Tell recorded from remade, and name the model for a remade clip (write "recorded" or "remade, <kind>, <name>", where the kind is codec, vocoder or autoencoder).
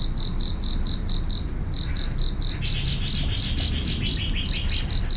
recorded